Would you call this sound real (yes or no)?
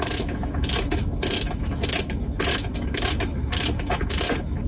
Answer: no